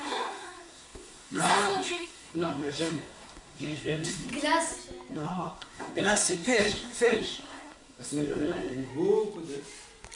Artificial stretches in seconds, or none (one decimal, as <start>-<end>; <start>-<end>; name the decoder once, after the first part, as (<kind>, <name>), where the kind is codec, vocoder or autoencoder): 0.0-4.3 (codec, SNAC); 5.1-8.9